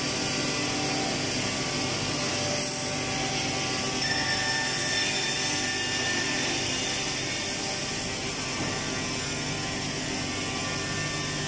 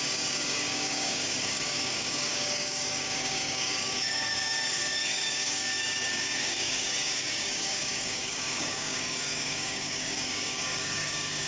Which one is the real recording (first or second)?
first